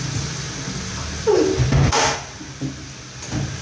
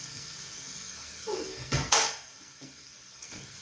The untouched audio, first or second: first